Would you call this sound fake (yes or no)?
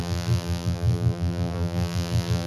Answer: yes